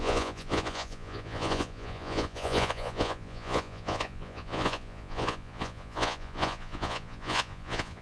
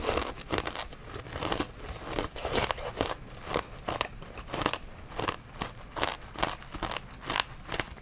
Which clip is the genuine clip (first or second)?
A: second